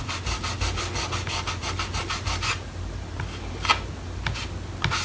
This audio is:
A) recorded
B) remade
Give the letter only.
A